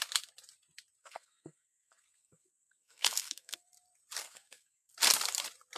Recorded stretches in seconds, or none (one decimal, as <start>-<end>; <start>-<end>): 0.0-1.0; 3.7-4.2; 4.9-5.8